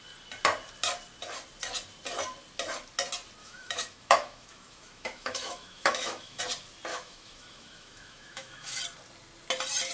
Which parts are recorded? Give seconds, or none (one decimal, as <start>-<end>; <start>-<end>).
0.0-3.4; 6.4-6.9; 8.8-9.9